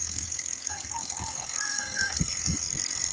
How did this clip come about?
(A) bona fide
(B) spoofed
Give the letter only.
B